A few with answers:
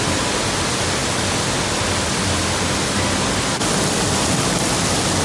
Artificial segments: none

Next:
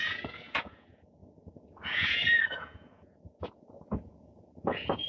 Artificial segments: 0.0-5.1